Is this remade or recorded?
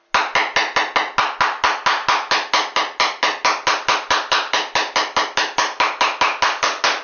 recorded